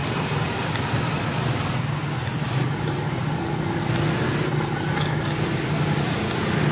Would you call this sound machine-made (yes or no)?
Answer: no